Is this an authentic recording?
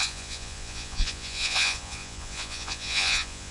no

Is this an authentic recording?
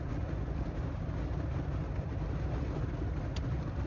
yes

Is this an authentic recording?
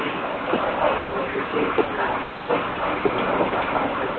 yes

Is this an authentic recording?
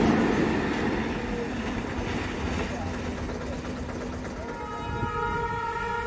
yes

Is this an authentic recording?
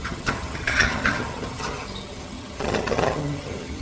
no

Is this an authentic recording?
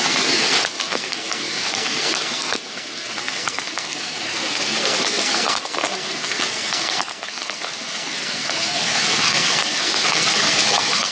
no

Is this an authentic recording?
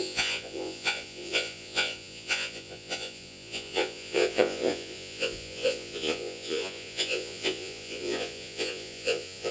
no